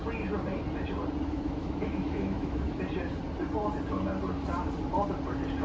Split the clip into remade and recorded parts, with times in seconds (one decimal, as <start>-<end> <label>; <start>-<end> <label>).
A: 0.0-1.2 recorded; 1.2-2.8 remade; 2.8-5.6 recorded